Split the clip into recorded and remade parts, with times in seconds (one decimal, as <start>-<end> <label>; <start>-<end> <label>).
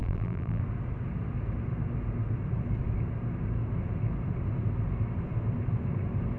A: 0.0-0.6 remade; 0.6-6.4 recorded